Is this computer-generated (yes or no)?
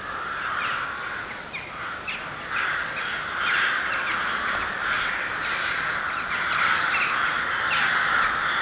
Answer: no